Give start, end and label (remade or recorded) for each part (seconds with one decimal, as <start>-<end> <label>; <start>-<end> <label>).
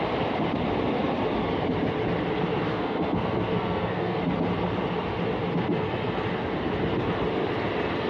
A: 0.0-2.7 recorded; 2.7-4.2 remade; 4.2-8.1 recorded